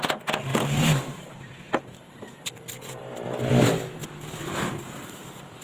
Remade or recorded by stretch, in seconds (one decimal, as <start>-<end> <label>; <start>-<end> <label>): 0.0-0.5 recorded; 0.5-3.0 remade; 3.0-5.6 recorded